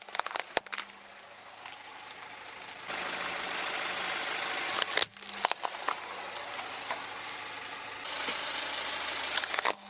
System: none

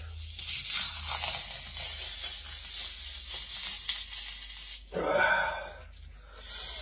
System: none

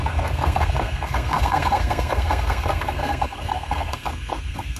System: codec, SNAC